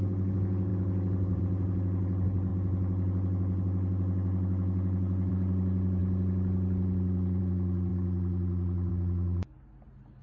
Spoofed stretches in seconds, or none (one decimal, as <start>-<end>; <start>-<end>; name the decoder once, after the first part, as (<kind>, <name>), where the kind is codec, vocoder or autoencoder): none